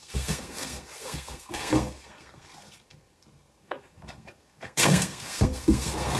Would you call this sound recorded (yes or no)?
no